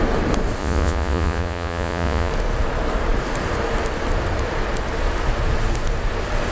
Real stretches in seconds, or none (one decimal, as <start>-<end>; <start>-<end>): 0.0-0.6; 2.3-6.5